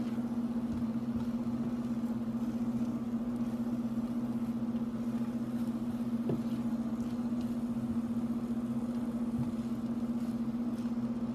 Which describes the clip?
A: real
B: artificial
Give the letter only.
A